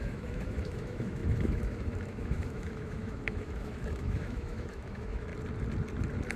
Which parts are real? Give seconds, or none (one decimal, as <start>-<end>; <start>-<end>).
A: 5.3-6.4

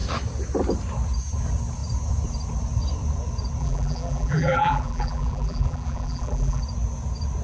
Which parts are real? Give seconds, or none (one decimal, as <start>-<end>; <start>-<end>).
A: 0.0-3.6; 6.6-7.4

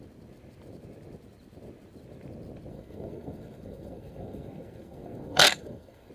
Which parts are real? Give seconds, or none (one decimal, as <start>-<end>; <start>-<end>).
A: 0.0-2.7

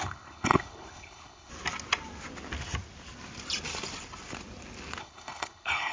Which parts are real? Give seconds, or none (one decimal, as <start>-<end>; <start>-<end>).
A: 1.5-5.0

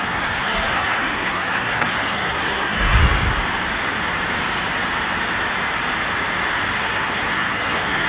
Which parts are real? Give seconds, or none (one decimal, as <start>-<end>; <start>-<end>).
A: 3.0-6.8

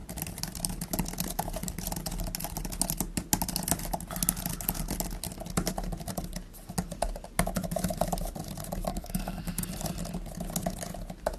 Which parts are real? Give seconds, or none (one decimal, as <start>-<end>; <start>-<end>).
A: 0.0-8.9; 9.7-11.4

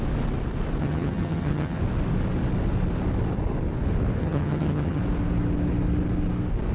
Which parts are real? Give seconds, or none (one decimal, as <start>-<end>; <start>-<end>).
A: 0.0-0.8; 1.8-4.2; 5.0-6.7

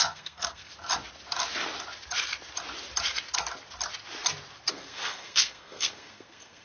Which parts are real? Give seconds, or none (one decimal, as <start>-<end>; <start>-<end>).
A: 0.7-4.7